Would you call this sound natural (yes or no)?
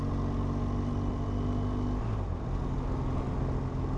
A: yes